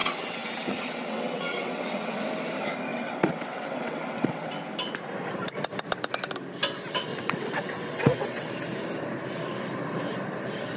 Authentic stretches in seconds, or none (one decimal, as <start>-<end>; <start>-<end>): 2.2-2.9; 4.5-7.1; 8.5-10.8